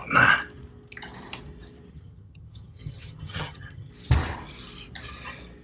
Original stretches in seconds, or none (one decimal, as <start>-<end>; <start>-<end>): 0.0-1.9; 3.9-5.6